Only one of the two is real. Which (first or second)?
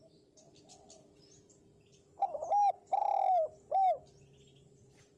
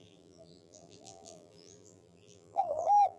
first